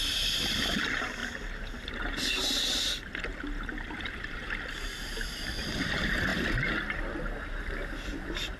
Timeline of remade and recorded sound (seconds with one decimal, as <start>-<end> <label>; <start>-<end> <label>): 0.0-8.6 recorded